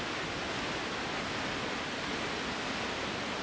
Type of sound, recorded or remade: recorded